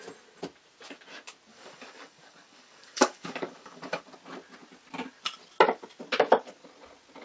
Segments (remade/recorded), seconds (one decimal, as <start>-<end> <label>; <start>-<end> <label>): 0.0-1.5 recorded; 1.5-4.0 remade; 4.0-7.2 recorded

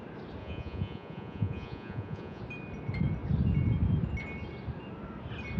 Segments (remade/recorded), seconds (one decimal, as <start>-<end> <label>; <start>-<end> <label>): 0.0-0.4 recorded; 0.4-2.4 remade; 2.4-5.6 recorded